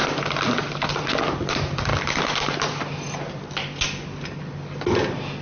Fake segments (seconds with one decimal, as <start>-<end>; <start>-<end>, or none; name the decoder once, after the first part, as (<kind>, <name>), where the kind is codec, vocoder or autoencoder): none